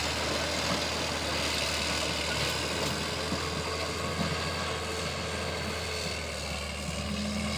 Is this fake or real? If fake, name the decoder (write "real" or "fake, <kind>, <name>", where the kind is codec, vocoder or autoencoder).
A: real